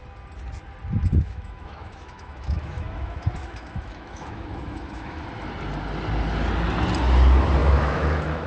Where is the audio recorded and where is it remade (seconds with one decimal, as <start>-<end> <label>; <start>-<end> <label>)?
0.0-1.0 recorded; 1.0-5.5 remade; 5.5-7.6 recorded; 7.6-8.5 remade